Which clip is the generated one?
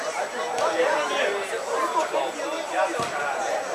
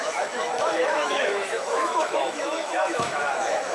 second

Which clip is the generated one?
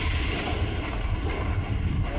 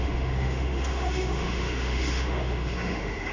second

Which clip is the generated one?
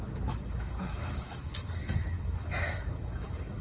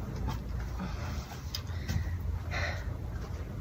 first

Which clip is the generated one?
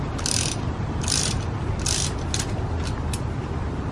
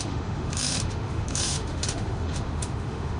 second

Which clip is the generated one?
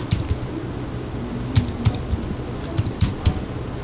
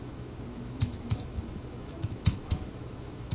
second